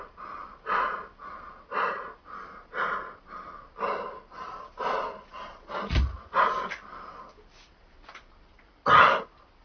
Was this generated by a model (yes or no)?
no